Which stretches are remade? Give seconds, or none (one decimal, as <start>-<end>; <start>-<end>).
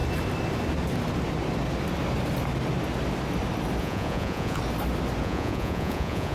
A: 3.8-4.6; 5.2-6.3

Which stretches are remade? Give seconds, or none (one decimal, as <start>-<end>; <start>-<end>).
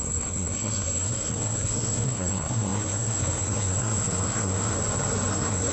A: 0.0-4.8; 5.3-5.7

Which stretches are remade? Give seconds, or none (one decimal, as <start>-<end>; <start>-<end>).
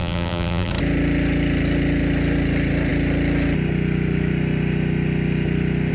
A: 0.0-0.7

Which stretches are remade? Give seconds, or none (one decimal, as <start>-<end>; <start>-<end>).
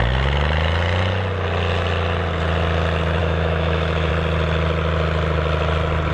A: 3.2-4.1